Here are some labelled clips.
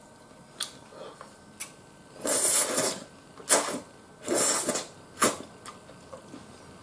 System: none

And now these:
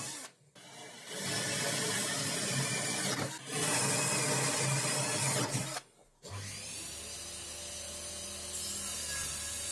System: none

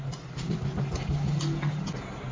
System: none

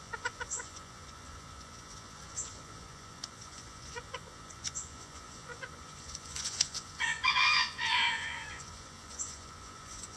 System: vocoder, Vocos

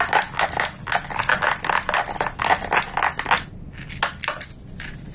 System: none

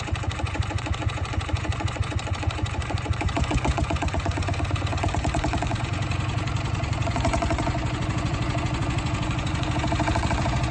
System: vocoder, Vocos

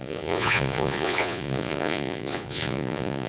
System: vocoder, Vocos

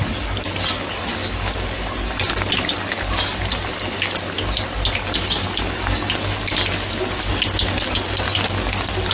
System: none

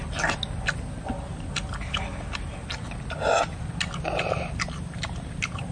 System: none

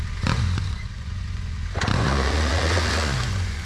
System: vocoder, Vocos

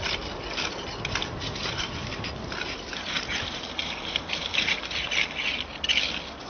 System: none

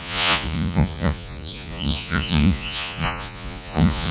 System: vocoder, Vocos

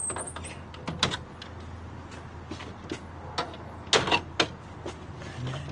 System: none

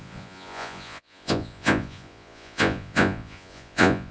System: vocoder, Vocos